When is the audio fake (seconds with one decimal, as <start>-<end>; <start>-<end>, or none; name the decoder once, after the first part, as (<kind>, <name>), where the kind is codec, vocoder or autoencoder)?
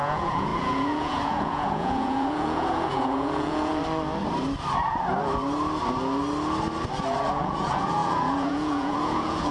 0.0-3.7 (vocoder, Vocos); 7.3-9.5